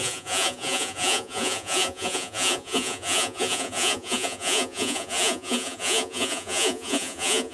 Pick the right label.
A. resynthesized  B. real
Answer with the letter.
A